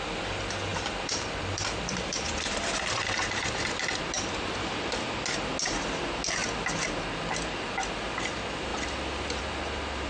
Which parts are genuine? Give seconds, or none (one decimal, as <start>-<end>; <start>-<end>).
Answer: 0.0-0.7; 4.0-6.4; 6.9-10.1